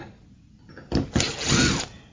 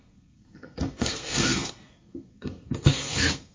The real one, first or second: first